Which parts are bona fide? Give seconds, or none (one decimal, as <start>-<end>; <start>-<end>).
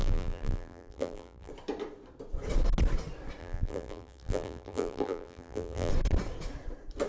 1.5-3.4; 5.9-7.1